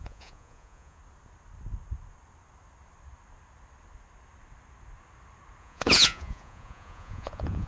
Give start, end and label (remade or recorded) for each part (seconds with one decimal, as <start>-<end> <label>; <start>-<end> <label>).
0.0-1.0 remade; 1.0-5.6 recorded; 5.6-7.7 remade